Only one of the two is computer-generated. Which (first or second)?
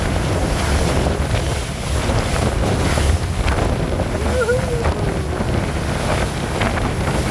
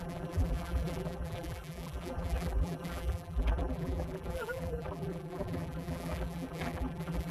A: second